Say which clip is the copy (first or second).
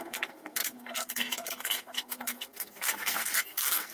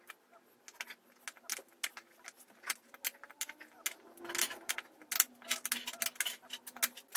first